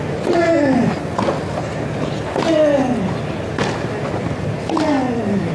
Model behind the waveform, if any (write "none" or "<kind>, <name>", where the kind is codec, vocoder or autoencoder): none